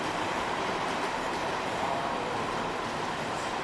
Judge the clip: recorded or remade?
remade